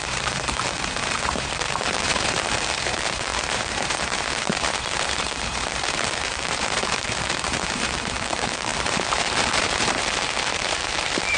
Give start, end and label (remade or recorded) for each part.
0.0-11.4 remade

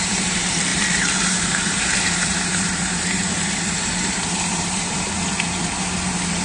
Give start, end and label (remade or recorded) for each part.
0.0-6.4 remade

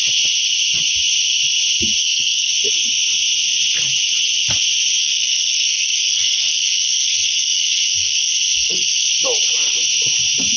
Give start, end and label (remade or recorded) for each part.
0.0-2.0 recorded; 2.0-2.5 remade; 2.5-5.0 recorded; 5.0-9.1 remade; 9.1-10.6 recorded

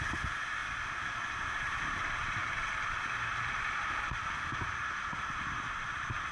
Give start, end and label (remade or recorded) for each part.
0.0-6.3 recorded

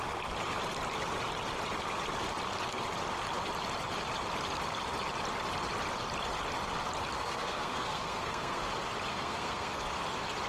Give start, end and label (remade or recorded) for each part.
0.0-7.2 recorded; 7.2-8.6 remade; 8.6-9.1 recorded; 9.1-9.7 remade; 9.7-10.5 recorded

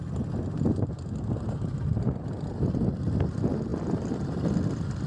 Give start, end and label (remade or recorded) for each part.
0.0-5.1 recorded